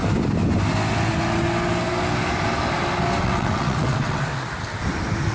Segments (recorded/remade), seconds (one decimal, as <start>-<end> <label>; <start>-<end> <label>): 0.0-3.2 recorded; 3.2-4.3 remade; 4.3-5.3 recorded